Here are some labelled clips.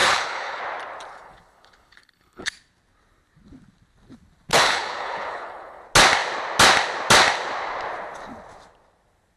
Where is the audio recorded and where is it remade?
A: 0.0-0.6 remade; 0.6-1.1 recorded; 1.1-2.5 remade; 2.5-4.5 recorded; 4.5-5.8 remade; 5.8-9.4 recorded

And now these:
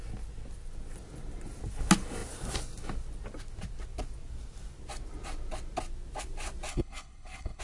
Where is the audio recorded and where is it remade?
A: 0.0-6.7 recorded; 6.7-7.6 remade

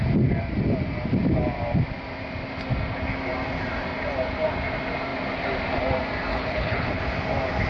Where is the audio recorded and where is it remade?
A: 0.0-6.3 recorded; 6.3-7.0 remade; 7.0-7.7 recorded

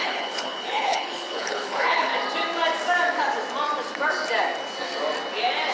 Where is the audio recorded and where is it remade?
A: 0.0-2.1 remade; 2.1-5.7 recorded